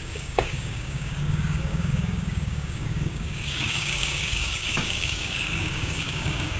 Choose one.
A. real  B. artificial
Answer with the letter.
B